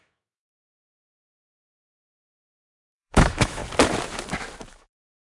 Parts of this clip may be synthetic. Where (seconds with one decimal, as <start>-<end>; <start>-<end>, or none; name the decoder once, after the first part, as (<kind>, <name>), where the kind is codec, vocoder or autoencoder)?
0.0-3.6 (autoencoder, DAC-VAE); 4.7-5.3